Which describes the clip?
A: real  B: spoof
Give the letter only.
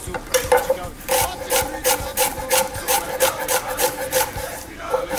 B